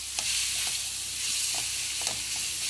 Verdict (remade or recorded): recorded